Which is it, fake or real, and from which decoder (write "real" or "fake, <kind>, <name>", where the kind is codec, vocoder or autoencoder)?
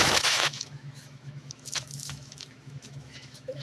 fake, autoencoder, DAC-VAE